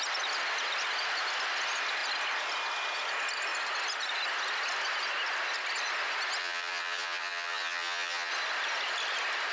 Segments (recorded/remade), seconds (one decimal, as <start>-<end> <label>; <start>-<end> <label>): 0.0-6.4 recorded; 6.4-8.3 remade; 8.3-9.5 recorded

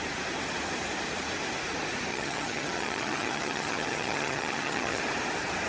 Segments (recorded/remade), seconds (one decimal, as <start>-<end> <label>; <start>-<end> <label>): 0.0-2.1 recorded; 2.1-5.0 remade; 5.0-5.7 recorded

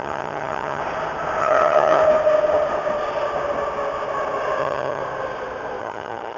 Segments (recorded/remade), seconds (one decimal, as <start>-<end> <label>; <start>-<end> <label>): 0.0-0.8 remade; 0.8-1.4 recorded; 1.4-2.0 remade; 2.0-4.6 recorded; 4.6-5.0 remade; 5.0-5.8 recorded; 5.8-6.4 remade